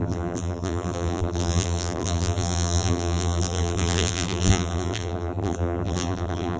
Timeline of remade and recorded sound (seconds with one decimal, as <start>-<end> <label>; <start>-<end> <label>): 0.0-6.6 remade